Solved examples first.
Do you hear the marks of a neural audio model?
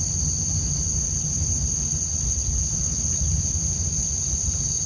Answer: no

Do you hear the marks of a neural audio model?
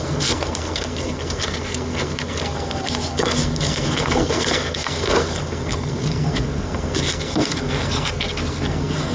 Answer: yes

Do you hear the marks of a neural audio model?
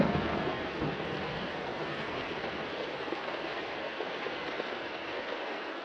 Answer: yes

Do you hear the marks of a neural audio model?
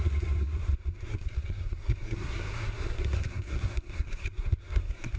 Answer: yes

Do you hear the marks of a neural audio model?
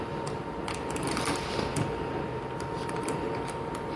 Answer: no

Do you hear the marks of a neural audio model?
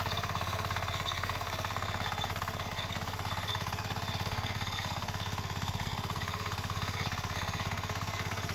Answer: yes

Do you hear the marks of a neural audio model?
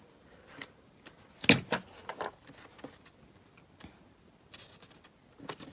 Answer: no